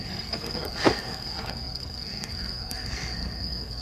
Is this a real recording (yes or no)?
no